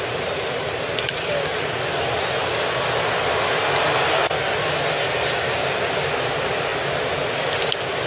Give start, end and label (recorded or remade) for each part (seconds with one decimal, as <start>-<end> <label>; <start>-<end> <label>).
0.0-8.1 recorded